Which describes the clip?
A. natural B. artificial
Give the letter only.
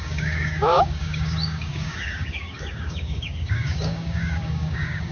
B